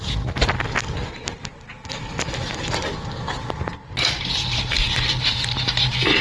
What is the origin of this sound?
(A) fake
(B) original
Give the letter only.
B